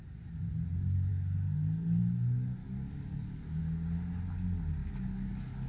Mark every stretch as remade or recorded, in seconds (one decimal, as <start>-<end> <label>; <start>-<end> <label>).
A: 0.0-1.1 recorded; 1.1-2.0 remade; 2.0-2.6 recorded; 2.6-3.6 remade; 3.6-4.8 recorded; 4.8-5.7 remade